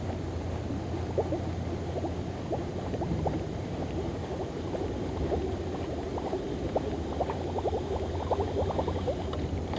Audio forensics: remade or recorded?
recorded